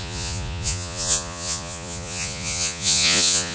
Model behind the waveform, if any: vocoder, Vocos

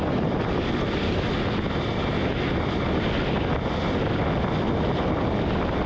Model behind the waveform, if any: none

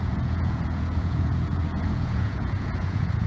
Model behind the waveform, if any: vocoder, Vocos